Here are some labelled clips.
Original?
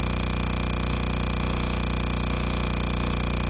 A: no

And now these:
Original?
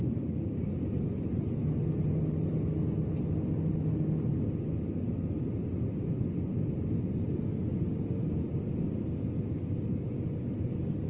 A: yes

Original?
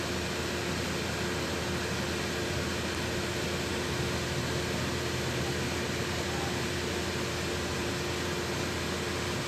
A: yes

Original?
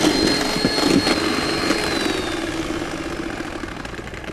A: yes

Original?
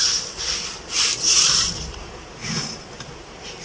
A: no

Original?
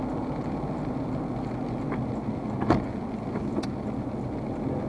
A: yes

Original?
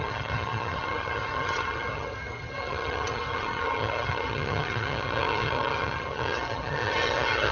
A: no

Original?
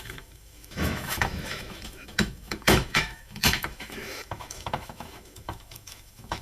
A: no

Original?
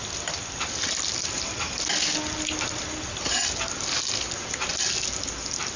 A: yes